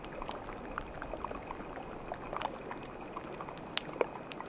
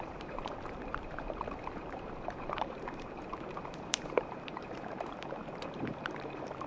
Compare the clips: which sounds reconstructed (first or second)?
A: second